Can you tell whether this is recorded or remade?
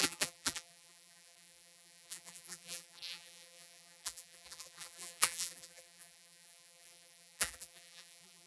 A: remade